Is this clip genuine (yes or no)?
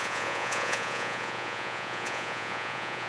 no